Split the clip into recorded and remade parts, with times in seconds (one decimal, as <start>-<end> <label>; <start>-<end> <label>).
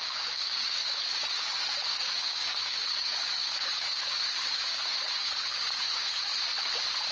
0.0-6.3 remade; 6.3-7.1 recorded